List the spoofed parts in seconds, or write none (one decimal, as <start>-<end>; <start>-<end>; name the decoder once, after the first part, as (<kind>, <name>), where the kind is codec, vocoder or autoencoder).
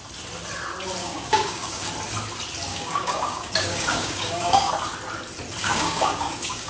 1.0-1.9 (codec, DAC); 2.7-4.7; 5.6-6.7